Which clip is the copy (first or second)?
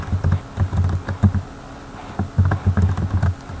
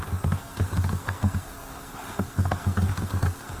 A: second